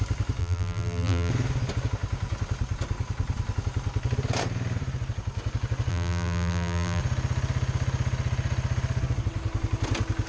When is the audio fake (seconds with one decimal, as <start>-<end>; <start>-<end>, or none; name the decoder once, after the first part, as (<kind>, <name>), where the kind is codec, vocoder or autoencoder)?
0.4-1.3 (vocoder, BigVGAN v2); 5.9-7.0